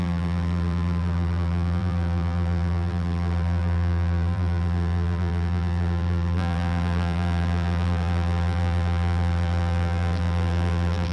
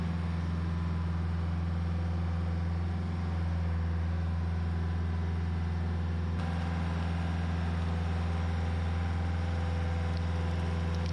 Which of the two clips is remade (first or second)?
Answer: first